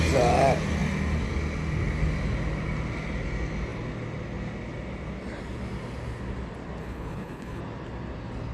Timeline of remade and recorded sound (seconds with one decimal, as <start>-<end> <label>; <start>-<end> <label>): 0.0-6.8 recorded; 6.8-7.6 remade; 7.6-8.5 recorded